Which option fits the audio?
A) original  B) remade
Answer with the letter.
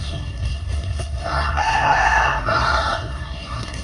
B